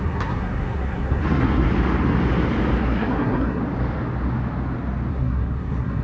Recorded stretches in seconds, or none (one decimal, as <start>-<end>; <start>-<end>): 1.7-2.8; 3.6-5.1